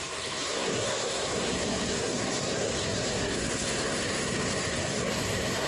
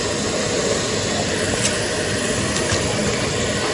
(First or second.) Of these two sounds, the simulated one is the first